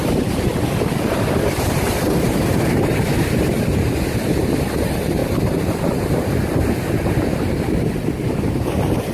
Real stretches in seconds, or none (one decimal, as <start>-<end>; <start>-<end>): 5.2-6.0

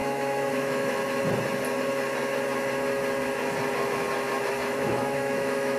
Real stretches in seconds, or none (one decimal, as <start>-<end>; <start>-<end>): 1.0-4.5

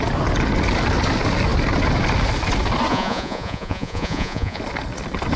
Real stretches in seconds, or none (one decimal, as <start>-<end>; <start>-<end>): 0.0-2.9; 4.6-5.4

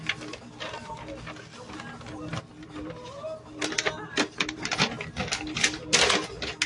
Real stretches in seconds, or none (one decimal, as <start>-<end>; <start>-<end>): 0.0-6.7

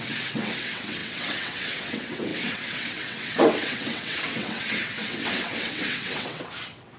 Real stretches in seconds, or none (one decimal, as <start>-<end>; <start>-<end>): none

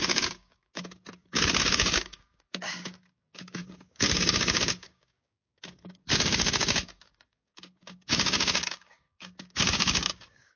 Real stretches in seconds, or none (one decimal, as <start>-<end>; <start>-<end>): none

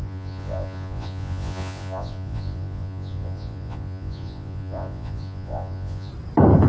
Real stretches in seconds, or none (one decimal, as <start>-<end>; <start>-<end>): 6.1-6.7

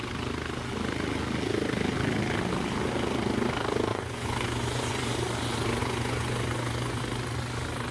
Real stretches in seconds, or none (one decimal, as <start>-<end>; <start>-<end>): 0.0-3.9; 5.0-5.8; 7.0-7.9